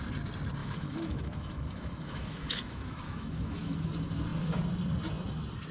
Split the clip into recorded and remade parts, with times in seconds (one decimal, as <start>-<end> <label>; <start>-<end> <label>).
0.0-0.6 recorded; 0.6-3.9 remade; 3.9-5.7 recorded